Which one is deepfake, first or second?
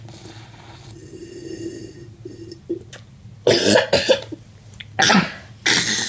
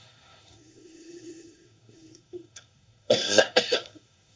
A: second